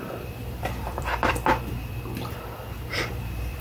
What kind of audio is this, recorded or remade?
remade